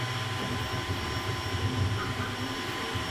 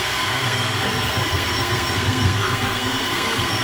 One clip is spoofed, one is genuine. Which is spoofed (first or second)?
second